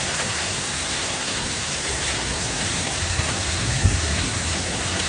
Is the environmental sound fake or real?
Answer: fake